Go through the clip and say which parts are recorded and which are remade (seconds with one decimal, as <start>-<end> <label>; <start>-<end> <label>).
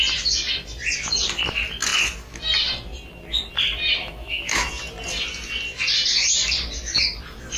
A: 0.0-4.0 recorded; 4.0-4.7 remade; 4.7-7.6 recorded